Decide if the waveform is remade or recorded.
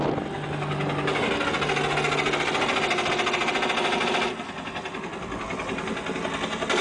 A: recorded